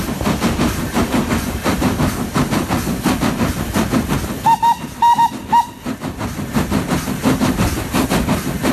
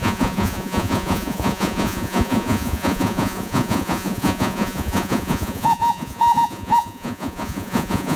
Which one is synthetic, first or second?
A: second